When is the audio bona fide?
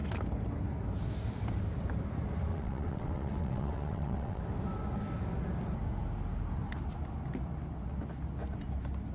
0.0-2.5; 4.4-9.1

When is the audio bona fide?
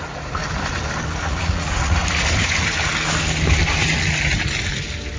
0.4-1.2; 2.0-5.2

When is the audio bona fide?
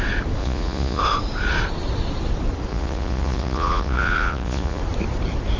0.0-0.4; 1.0-2.7; 4.8-5.6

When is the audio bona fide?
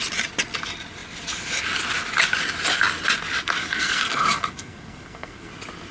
0.0-3.6; 5.5-5.9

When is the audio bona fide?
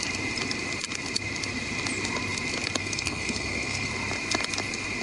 0.0-2.8; 3.9-5.0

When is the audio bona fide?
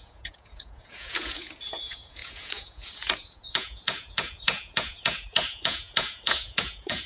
none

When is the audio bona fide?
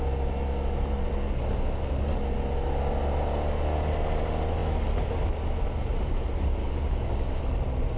0.0-6.6; 7.4-8.0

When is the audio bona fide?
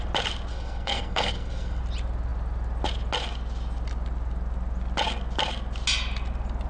0.0-0.5; 1.8-6.7